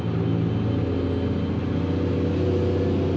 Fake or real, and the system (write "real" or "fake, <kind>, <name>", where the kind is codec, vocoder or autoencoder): real